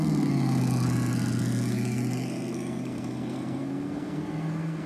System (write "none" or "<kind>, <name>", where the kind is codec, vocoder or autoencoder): codec, SNAC